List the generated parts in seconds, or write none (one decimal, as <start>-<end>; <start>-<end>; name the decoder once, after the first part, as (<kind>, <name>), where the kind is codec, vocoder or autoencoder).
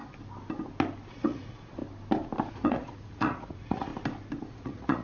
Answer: 1.1-1.8 (vocoder, Vocos); 2.5-3.9; 4.5-5.0